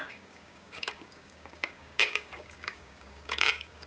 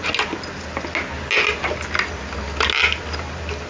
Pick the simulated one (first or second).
first